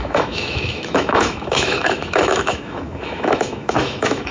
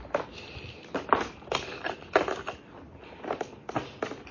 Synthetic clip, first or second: first